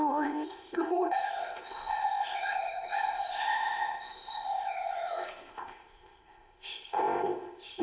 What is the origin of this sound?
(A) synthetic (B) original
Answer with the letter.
A